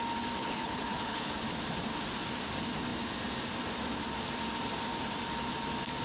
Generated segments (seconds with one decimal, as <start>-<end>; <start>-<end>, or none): 0.4-1.3